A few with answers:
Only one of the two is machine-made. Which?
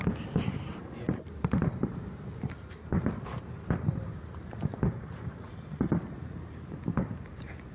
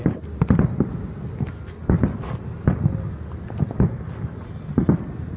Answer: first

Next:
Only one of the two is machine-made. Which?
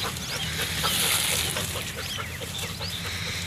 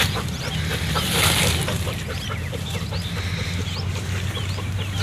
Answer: second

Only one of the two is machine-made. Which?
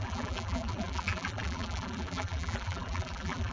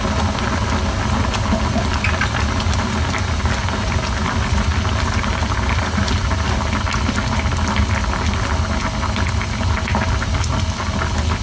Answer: first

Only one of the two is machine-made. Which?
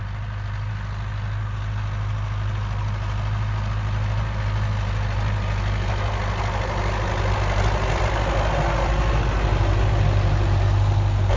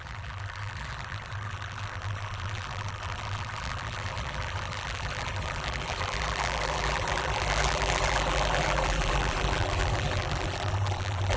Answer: second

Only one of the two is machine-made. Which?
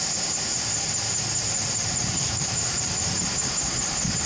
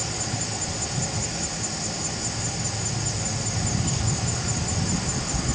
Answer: first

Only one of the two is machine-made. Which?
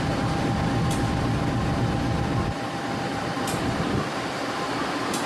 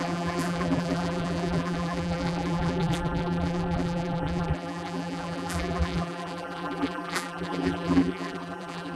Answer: second